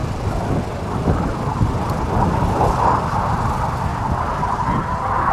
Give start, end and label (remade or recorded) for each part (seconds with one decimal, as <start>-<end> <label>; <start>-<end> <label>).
0.0-3.9 recorded; 3.9-4.4 remade; 4.4-5.3 recorded